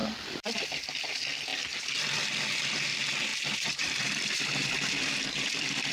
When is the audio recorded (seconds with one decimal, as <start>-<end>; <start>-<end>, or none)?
1.1-1.5; 2.3-3.3; 4.9-5.9